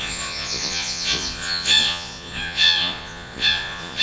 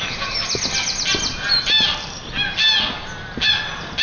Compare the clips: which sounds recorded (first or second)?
second